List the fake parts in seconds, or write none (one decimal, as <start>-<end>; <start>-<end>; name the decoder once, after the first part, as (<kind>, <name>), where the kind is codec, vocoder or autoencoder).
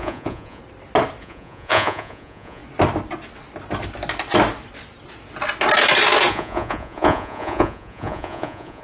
0.0-0.6 (vocoder, Vocos); 1.2-2.6; 6.3-8.8